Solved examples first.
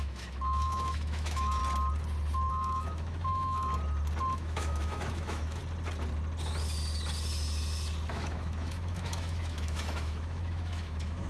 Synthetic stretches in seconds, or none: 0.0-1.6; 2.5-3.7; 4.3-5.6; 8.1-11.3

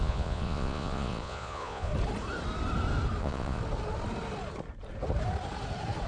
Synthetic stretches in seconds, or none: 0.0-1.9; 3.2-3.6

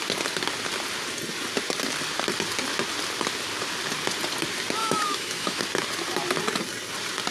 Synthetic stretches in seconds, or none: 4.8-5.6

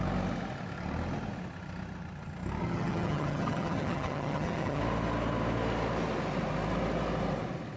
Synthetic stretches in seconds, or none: 2.6-4.8